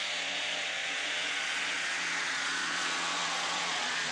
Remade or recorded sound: remade